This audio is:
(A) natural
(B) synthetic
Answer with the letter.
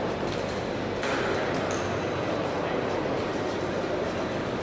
A